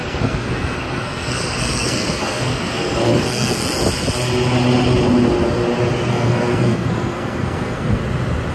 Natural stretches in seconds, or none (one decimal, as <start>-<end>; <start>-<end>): 3.6-6.1; 8.0-8.5